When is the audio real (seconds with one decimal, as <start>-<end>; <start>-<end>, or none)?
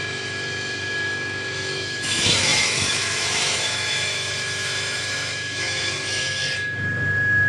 6.4-7.5